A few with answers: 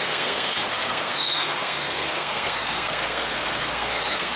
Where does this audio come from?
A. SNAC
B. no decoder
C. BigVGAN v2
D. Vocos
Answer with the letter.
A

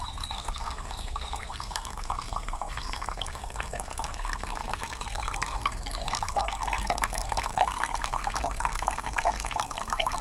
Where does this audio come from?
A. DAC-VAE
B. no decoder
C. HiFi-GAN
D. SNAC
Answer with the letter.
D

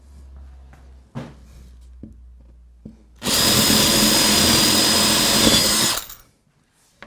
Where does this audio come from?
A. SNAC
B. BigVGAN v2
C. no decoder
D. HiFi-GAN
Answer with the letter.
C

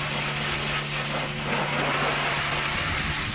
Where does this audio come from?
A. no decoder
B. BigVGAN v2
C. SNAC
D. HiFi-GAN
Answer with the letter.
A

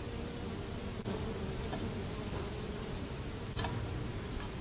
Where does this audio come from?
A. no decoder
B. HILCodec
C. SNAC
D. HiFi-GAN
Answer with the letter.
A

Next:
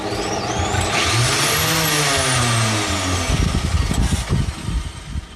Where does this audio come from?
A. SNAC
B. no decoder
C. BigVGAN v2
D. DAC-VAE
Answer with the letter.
B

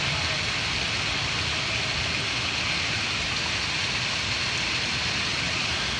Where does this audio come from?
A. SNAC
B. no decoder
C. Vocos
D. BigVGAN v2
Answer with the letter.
B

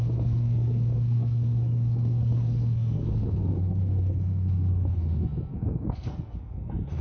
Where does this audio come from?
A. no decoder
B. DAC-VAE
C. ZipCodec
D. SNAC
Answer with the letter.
D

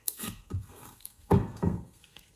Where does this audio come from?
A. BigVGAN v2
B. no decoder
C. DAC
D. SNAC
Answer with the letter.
D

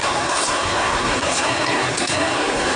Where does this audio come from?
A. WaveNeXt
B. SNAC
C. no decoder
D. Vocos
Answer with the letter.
B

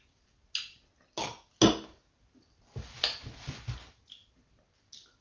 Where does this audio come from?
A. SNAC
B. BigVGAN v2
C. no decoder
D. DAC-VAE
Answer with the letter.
C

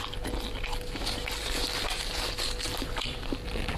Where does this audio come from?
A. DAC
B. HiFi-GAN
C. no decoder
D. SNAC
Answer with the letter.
C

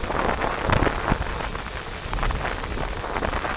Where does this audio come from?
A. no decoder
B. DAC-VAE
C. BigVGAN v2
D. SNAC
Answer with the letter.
A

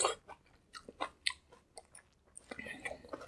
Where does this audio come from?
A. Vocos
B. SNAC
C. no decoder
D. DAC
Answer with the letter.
C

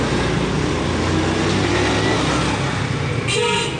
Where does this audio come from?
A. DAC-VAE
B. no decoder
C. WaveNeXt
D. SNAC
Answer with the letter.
B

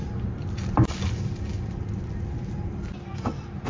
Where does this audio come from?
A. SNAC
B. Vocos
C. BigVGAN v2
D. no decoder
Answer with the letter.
D